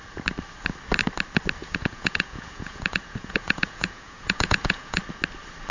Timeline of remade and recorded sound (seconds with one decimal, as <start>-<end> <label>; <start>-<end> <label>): 0.0-1.6 recorded; 1.6-5.0 remade; 5.0-5.7 recorded